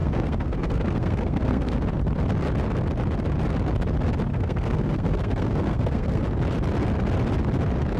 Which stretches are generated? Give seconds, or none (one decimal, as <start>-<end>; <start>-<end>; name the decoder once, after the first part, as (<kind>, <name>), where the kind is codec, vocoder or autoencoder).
0.0-1.8 (codec, SNAC); 4.3-6.2